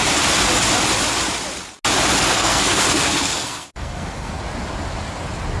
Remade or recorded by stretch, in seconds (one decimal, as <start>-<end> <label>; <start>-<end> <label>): 0.0-2.3 recorded; 2.3-4.4 remade; 4.4-5.6 recorded